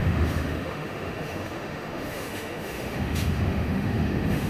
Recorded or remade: remade